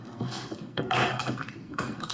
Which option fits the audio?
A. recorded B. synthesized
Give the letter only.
B